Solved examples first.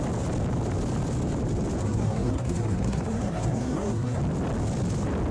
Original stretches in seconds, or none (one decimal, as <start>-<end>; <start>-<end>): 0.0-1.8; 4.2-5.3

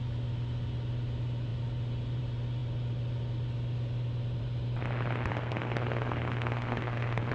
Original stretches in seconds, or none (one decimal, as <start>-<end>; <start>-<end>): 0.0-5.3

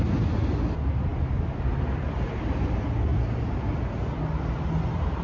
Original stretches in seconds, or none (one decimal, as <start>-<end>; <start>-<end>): 0.0-5.2

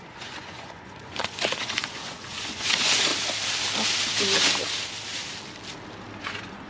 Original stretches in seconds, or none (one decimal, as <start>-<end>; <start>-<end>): 3.1-6.2

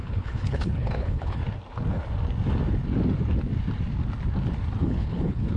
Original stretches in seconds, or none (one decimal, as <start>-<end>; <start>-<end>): 1.4-4.8

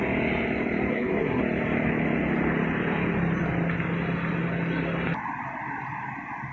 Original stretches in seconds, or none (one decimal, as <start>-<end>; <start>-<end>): 0.0-0.9; 1.4-6.5